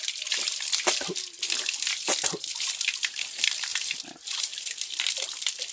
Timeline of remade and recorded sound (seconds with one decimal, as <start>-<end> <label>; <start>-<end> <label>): 0.0-3.7 remade; 3.7-4.4 recorded; 4.4-5.7 remade